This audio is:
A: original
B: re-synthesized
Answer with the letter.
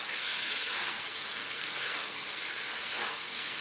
B